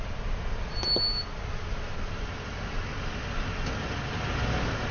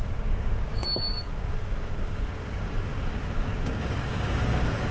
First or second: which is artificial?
second